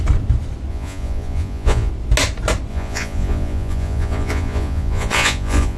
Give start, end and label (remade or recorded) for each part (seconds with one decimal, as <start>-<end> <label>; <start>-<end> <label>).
0.0-0.7 recorded; 0.7-1.9 remade; 1.9-2.7 recorded; 2.7-5.8 remade